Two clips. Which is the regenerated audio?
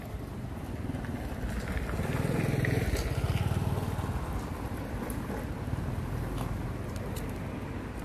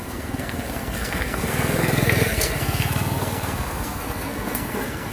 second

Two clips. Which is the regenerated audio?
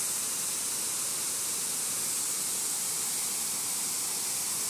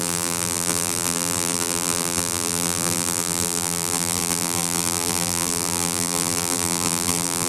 second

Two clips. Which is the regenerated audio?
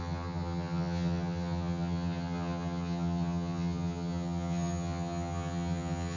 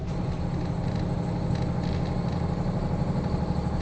first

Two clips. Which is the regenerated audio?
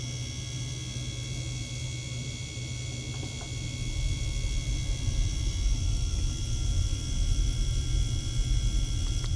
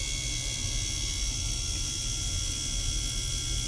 first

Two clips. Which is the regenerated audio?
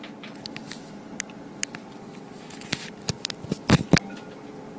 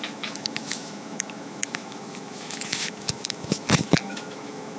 second